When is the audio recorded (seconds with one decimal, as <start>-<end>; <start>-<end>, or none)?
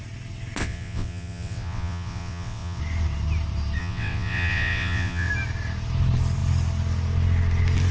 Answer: 0.0-0.6; 2.8-3.8; 5.3-7.9